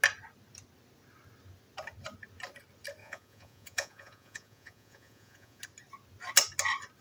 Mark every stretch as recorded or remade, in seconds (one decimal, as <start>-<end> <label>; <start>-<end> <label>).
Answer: 0.0-3.0 recorded; 3.0-5.6 remade; 5.6-7.0 recorded